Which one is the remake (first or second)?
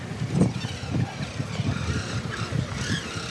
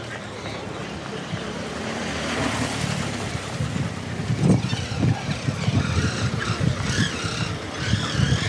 second